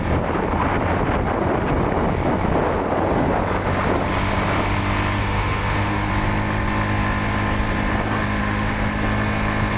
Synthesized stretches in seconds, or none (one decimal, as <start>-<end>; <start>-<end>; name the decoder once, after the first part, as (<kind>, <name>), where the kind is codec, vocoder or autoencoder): 5.2-6.1 (autoencoder, DAC-VAE); 8.4-8.9